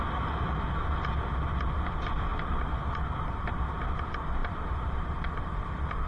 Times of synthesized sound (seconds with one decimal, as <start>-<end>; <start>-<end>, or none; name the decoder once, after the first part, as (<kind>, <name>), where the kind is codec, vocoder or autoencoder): 2.3-3.5 (vocoder, BigVGAN v2); 4.4-6.1